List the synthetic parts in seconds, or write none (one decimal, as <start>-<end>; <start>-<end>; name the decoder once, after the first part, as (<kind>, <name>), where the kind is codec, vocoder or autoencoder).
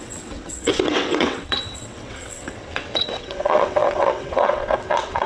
0.0-5.3 (vocoder, WaveNeXt)